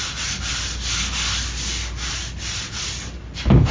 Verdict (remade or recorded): recorded